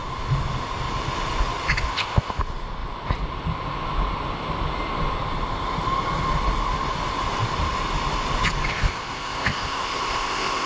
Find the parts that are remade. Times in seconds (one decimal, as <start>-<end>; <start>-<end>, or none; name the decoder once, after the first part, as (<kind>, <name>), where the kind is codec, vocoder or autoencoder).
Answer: 1.9-2.4 (codec, ZipCodec); 8.7-10.7